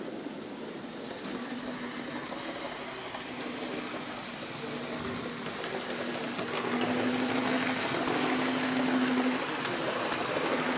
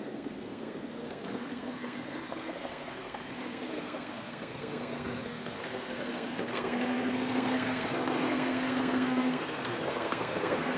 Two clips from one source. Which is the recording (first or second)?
first